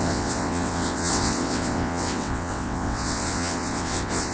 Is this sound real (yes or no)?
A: no